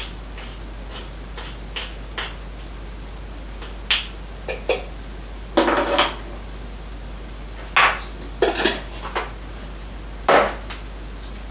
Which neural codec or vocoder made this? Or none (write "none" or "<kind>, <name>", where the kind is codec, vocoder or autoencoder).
none